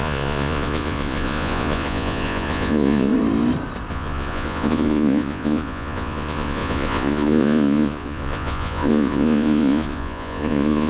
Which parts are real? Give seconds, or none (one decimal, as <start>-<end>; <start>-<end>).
3.1-3.9